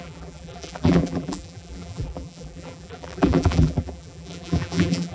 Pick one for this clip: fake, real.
fake